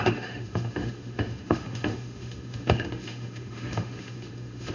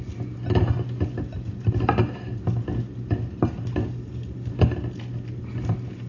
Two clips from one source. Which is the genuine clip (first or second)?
second